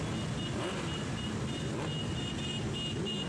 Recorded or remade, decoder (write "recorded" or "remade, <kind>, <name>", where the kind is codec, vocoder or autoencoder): recorded